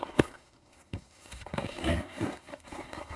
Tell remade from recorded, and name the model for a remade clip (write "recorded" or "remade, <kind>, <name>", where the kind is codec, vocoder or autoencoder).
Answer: remade, codec, SNAC